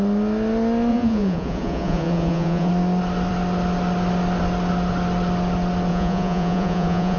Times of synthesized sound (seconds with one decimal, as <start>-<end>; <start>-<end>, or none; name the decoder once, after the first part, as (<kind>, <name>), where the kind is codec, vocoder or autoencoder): 0.9-2.7 (vocoder, Vocos); 5.9-7.2